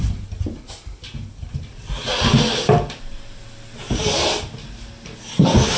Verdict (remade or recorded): recorded